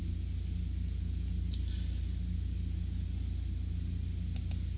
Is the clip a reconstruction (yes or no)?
no